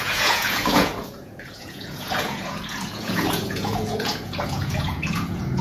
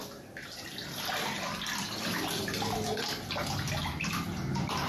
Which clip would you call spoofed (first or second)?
first